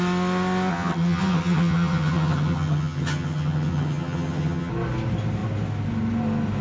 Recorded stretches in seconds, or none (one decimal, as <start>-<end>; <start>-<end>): 0.0-0.7; 4.7-6.6